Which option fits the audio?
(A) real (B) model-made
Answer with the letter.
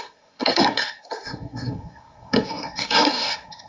B